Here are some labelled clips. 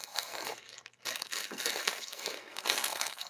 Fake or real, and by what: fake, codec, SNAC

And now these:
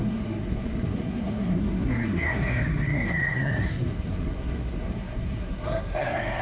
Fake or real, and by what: fake, codec, SNAC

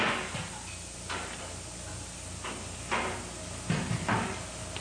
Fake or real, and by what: real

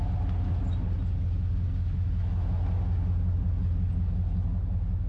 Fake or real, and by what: real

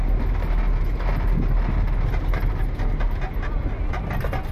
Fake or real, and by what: real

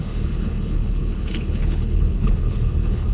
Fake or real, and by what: fake, codec, HILCodec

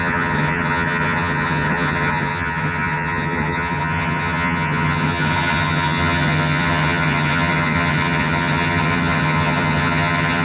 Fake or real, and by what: fake, vocoder, HiFi-GAN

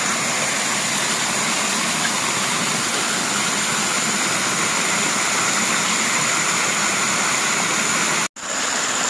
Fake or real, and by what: real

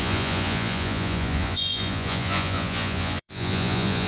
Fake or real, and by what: fake, vocoder, Vocos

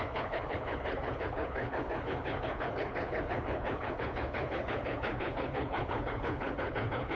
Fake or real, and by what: fake, codec, HILCodec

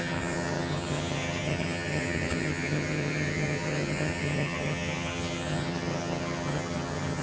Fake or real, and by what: fake, vocoder, HiFi-GAN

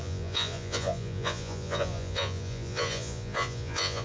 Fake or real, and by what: fake, vocoder, Vocos